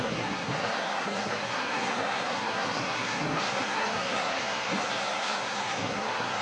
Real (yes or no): no